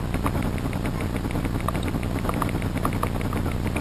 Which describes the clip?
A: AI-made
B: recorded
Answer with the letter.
B